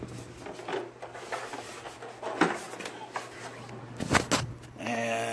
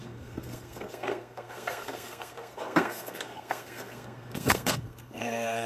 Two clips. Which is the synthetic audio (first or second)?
second